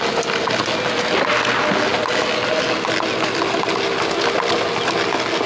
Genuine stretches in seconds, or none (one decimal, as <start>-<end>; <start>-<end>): 0.0-5.5